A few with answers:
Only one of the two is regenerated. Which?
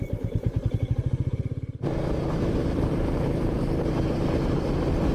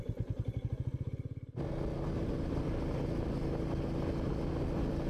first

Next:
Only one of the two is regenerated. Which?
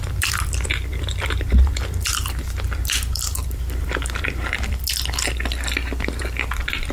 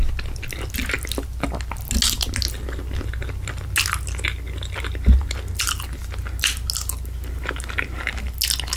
first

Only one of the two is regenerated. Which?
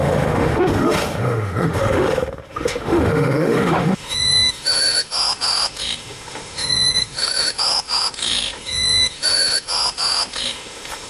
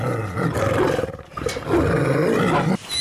first